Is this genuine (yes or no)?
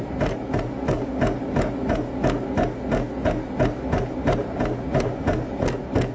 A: yes